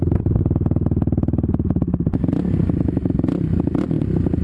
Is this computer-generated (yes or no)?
no